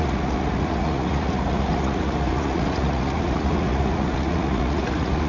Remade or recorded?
remade